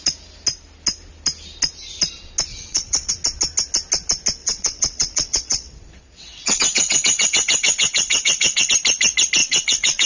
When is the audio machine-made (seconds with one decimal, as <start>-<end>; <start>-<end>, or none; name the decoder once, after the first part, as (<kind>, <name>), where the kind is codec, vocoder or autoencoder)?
2.5-3.1 (vocoder, WaveNeXt); 4.4-8.7; 9.4-10.1